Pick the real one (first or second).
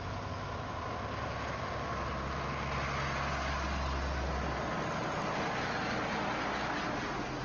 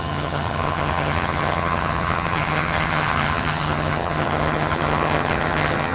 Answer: first